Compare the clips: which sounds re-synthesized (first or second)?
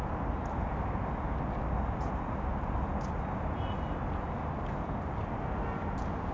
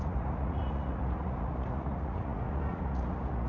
second